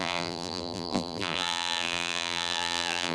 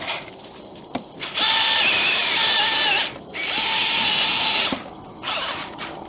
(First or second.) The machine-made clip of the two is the first